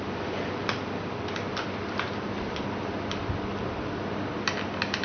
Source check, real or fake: real